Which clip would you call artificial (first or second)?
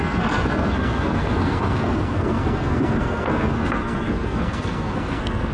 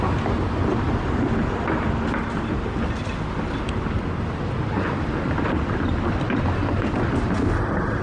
first